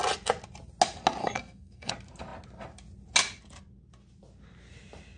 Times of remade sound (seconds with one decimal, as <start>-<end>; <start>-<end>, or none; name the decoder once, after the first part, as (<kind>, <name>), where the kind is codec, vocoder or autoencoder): 1.2-1.9 (codec, SNAC)